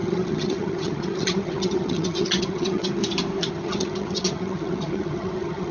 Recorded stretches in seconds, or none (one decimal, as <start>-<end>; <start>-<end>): 3.0-3.5